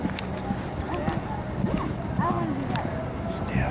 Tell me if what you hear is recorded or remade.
recorded